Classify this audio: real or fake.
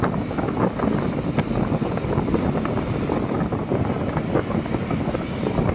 real